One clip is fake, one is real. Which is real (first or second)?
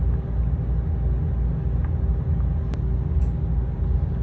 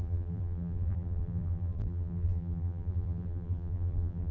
first